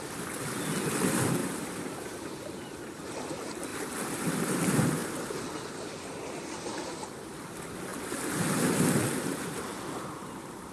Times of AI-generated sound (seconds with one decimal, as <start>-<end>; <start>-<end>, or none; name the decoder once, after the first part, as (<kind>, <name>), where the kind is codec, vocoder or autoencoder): 1.4-3.1 (vocoder, BigVGAN v2)